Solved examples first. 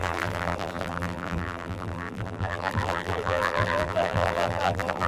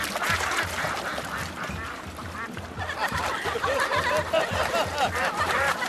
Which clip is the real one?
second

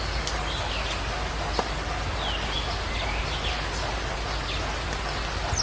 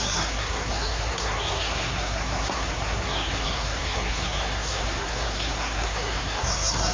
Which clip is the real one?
first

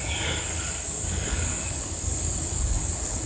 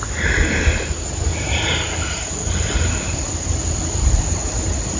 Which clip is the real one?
second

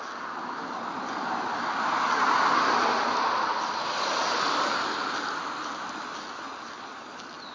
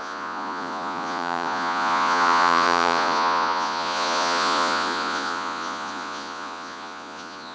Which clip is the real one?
first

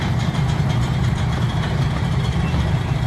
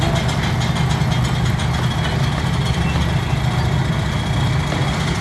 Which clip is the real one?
second